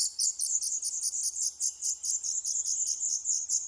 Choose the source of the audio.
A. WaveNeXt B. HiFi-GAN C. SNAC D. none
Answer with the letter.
D